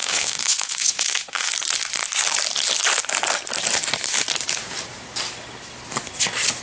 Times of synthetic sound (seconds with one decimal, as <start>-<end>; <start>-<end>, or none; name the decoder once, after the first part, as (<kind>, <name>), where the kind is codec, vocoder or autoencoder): 0.0-1.5 (autoencoder, DAC-VAE)